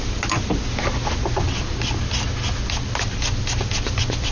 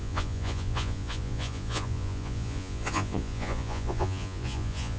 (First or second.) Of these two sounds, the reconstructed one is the second